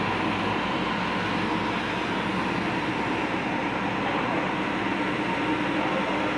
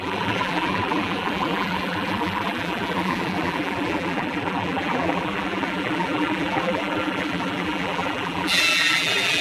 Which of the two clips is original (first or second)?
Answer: first